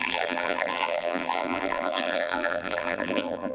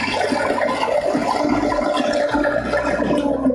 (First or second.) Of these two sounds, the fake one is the first